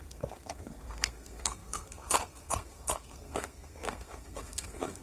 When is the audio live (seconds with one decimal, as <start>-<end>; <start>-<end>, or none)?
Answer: none